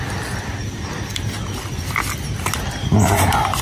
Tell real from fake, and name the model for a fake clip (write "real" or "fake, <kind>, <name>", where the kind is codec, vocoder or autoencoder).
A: real